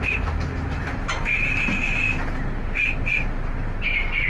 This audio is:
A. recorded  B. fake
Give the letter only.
A